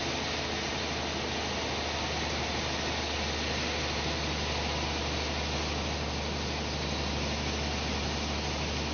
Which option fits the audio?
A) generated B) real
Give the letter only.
B